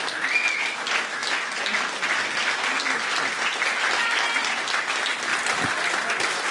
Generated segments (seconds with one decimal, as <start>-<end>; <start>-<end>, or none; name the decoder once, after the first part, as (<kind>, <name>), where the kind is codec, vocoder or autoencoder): none